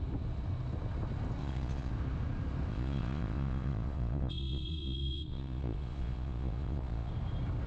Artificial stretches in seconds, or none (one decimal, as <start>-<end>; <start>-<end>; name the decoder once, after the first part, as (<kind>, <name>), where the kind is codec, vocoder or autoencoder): 1.4-1.9 (vocoder, Vocos); 2.7-7.1